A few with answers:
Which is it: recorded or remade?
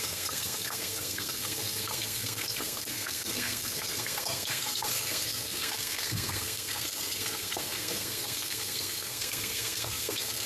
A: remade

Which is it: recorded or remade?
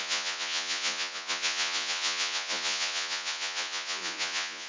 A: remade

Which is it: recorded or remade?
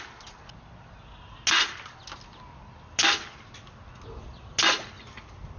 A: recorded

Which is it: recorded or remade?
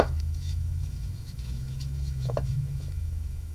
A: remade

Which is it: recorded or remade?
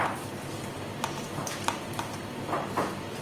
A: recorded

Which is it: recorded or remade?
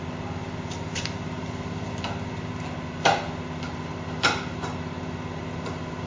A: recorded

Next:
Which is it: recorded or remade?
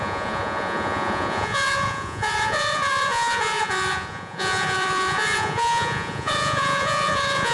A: remade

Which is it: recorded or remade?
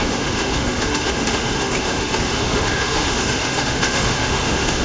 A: remade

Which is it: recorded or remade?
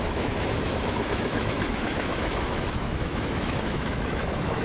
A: remade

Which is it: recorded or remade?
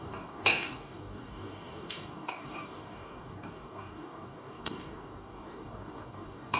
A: remade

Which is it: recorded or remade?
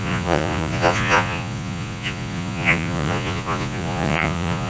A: remade